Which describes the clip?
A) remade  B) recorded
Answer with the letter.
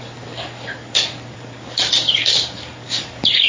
A